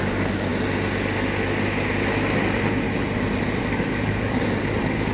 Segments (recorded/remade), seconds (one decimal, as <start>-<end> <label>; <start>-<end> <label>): 0.0-0.5 remade; 0.5-3.6 recorded; 3.6-5.1 remade